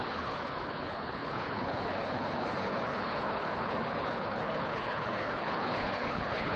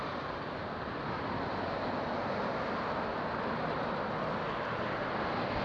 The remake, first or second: first